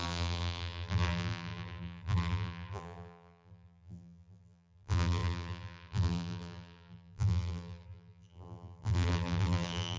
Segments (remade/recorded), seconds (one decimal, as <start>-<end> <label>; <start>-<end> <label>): 0.0-10.0 remade